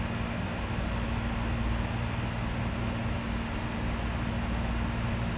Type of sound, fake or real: real